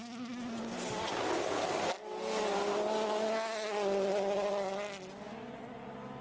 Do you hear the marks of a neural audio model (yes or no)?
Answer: no